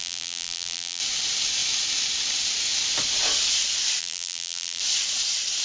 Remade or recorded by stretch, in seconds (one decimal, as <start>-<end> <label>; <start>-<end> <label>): 0.0-1.0 remade; 1.0-4.0 recorded; 4.0-4.8 remade; 4.8-5.6 recorded